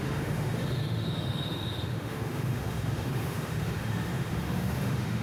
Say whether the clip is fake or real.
fake